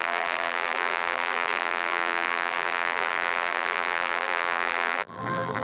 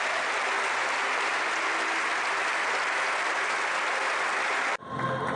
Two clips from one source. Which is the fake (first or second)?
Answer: first